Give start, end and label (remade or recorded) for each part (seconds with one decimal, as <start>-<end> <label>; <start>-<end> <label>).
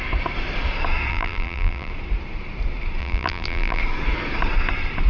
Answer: 0.0-1.1 recorded; 1.1-1.9 remade; 1.9-3.0 recorded; 3.0-3.8 remade; 3.8-5.1 recorded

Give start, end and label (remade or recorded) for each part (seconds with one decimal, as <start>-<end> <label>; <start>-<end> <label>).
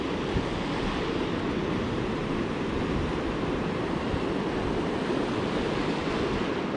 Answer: 0.0-6.8 recorded